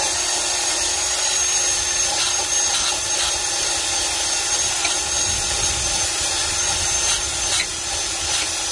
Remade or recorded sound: recorded